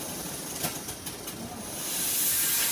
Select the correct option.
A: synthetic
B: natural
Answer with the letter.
B